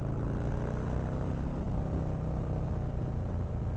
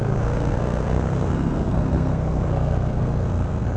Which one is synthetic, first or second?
second